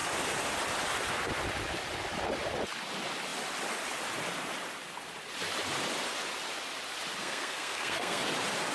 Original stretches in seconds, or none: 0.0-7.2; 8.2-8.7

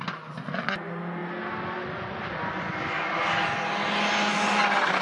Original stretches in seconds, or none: 0.0-5.0